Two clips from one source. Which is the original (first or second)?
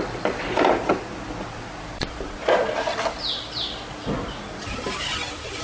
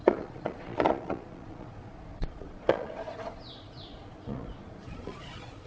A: first